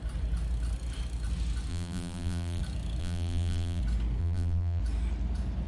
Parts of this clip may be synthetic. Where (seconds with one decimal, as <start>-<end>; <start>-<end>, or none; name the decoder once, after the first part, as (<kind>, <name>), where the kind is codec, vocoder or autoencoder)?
1.7-2.6 (vocoder, BigVGAN v2); 3.0-3.8; 4.2-4.8